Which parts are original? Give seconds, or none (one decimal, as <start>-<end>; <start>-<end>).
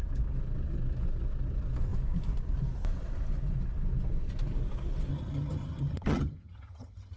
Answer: 0.0-5.1